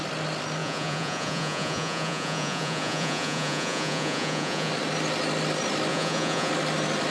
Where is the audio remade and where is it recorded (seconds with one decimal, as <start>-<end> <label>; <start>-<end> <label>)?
0.0-0.6 recorded; 0.6-4.7 remade; 4.7-5.9 recorded; 5.9-6.5 remade; 6.5-7.1 recorded